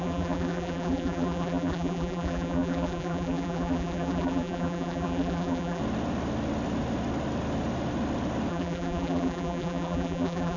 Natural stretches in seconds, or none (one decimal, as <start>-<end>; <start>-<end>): 5.8-8.5